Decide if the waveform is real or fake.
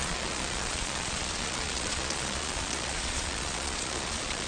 fake